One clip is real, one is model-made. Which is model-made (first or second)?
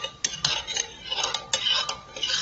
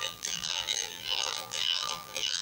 second